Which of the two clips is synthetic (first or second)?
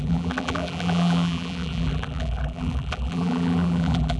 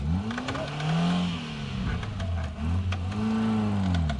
first